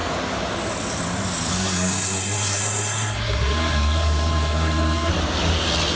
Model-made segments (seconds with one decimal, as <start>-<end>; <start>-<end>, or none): 1.5-5.1